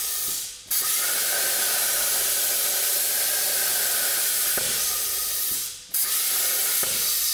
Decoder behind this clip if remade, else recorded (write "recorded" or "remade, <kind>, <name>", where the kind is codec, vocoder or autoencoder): recorded